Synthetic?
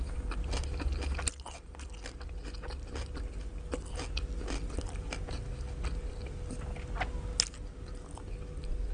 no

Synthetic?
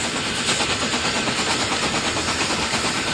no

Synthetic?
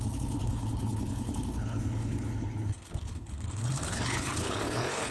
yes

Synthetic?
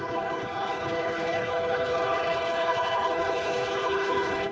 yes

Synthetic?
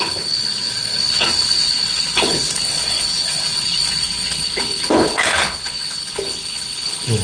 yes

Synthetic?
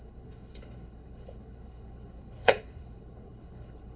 yes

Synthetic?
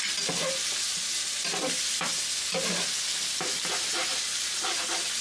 no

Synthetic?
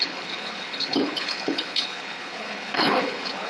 yes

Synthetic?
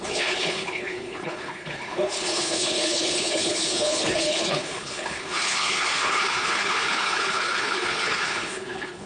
yes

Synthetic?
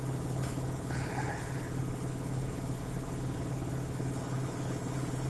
yes